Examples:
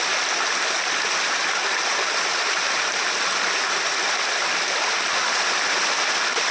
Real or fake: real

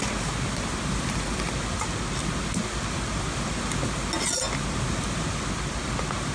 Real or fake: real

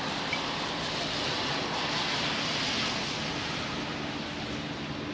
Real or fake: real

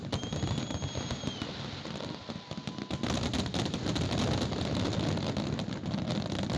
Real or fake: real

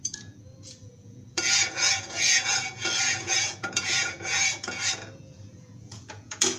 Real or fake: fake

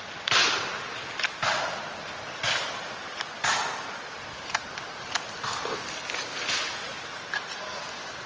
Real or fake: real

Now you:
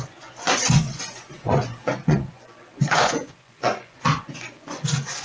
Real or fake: fake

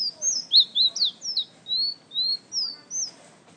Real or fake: real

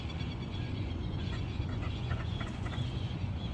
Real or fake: fake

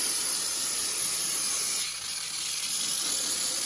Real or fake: real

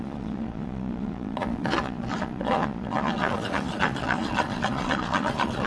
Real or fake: fake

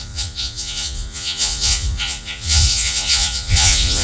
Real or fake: fake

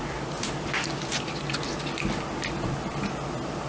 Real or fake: real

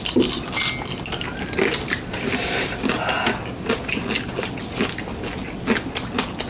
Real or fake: real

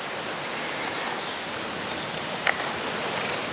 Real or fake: real